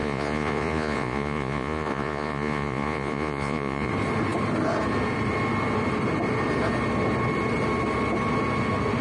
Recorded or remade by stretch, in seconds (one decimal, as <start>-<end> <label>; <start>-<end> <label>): 0.0-3.9 remade; 3.9-9.0 recorded